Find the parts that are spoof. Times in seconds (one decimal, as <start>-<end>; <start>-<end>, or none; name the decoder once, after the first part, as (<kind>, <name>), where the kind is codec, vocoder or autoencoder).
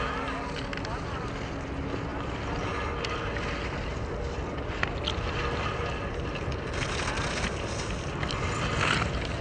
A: none